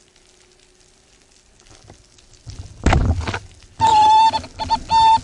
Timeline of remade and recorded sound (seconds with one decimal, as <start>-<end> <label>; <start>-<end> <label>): 0.0-5.2 recorded